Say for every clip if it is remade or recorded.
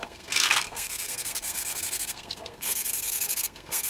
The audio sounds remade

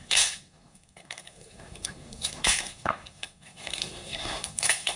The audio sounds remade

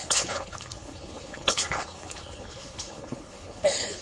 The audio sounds remade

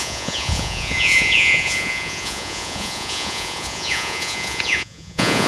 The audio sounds remade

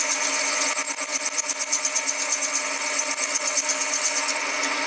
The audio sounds recorded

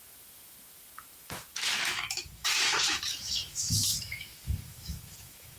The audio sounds remade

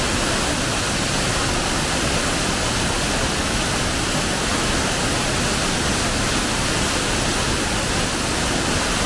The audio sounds recorded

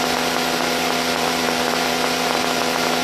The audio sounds recorded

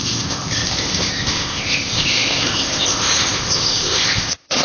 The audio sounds remade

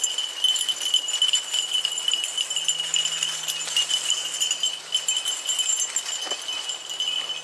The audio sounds recorded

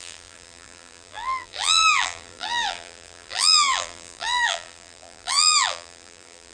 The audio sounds remade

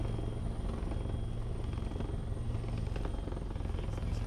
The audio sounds recorded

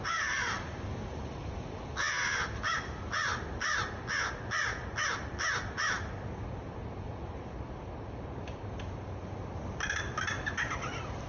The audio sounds recorded